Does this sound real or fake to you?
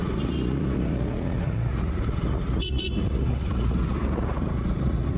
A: fake